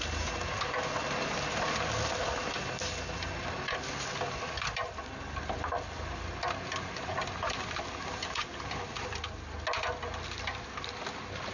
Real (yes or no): yes